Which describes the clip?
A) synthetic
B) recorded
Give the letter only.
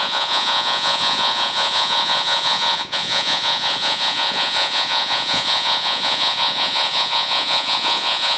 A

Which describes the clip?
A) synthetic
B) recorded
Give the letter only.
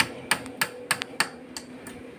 B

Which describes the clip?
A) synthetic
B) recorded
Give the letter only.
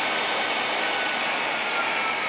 B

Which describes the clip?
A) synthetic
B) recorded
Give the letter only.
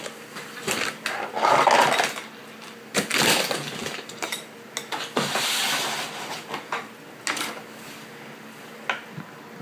B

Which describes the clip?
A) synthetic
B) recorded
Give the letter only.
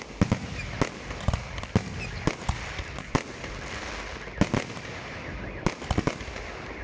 B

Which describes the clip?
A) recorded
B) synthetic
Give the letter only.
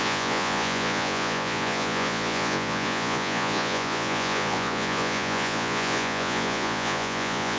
B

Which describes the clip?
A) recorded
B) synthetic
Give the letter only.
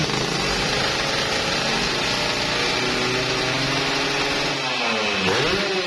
A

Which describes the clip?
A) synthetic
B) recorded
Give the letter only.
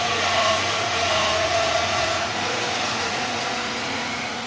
A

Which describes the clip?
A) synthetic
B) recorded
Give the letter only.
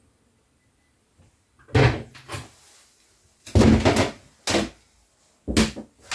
B